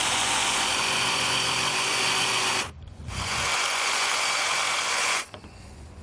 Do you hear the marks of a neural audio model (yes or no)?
yes